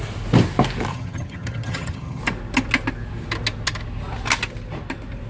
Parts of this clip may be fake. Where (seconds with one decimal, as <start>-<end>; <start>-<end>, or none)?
0.9-2.2